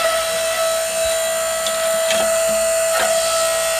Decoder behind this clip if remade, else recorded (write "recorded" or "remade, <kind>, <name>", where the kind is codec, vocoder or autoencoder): recorded